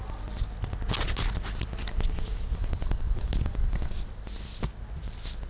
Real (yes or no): yes